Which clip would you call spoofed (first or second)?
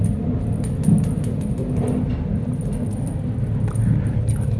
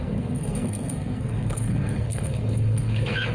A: second